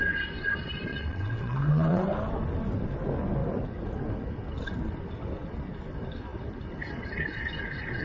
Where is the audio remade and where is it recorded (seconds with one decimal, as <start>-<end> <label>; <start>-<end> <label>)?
0.0-0.9 recorded; 0.9-2.0 remade; 2.0-8.0 recorded